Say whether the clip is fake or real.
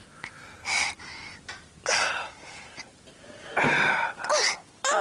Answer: real